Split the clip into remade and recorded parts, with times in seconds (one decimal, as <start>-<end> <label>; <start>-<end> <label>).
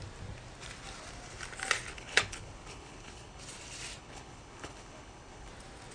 0.0-1.9 recorded; 1.9-3.4 remade; 3.4-4.0 recorded; 4.0-5.5 remade; 5.5-5.9 recorded